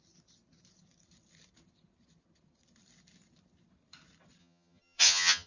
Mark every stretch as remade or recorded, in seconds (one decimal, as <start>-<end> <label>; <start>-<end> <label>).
0.0-4.4 recorded; 4.4-5.5 remade